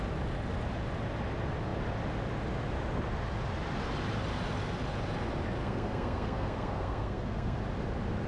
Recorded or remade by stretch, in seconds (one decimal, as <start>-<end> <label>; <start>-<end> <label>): 0.0-5.6 recorded; 5.6-7.6 remade; 7.6-8.3 recorded